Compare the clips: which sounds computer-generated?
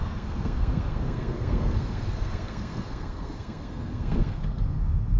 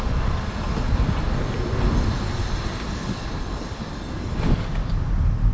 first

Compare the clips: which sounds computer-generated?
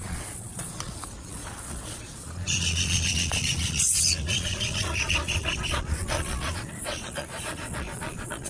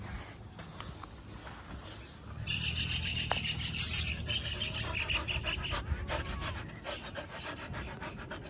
first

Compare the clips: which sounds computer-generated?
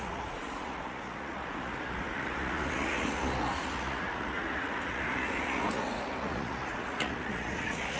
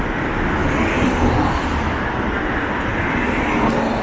first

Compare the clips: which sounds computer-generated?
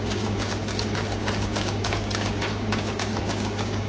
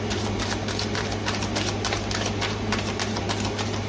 first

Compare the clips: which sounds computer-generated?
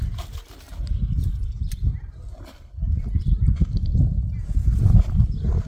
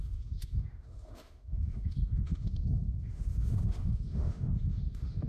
second